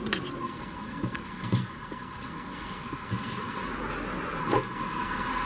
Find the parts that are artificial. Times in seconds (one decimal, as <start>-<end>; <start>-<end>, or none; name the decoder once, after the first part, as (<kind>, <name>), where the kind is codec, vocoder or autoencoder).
0.4-3.7 (codec, SNAC); 4.4-5.5